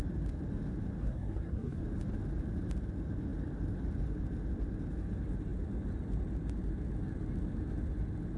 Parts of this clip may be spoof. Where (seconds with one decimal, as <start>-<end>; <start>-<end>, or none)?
1.0-1.8